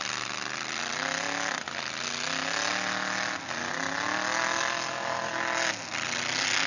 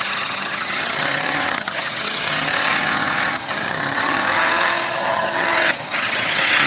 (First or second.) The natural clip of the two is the first